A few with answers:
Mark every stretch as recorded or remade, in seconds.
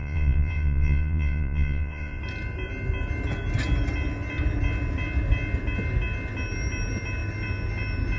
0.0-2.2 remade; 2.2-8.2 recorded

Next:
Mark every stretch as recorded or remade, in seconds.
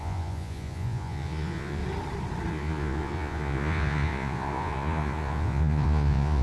0.0-1.8 remade; 1.8-2.5 recorded; 2.5-6.4 remade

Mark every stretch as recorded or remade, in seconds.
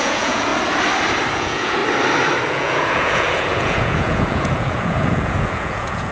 0.0-0.5 remade; 0.5-1.3 recorded; 1.3-1.8 remade; 1.8-2.5 recorded; 2.5-6.1 remade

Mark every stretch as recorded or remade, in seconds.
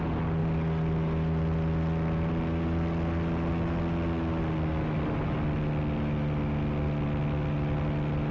0.0-8.3 recorded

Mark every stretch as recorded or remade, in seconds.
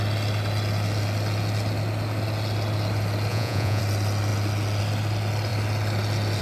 0.0-3.3 recorded; 3.3-3.8 remade; 3.8-6.4 recorded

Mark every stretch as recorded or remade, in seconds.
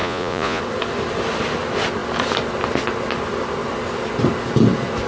0.0-0.6 remade; 0.6-5.1 recorded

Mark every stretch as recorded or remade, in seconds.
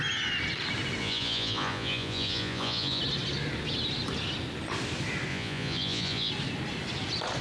0.0-1.0 recorded; 1.0-3.0 remade; 3.0-5.3 recorded; 5.3-6.3 remade; 6.3-7.4 recorded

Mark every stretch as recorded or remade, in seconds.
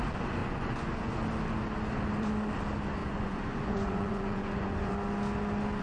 0.0-0.4 recorded; 0.4-1.1 remade; 1.1-3.0 recorded; 3.0-4.9 remade; 4.9-5.8 recorded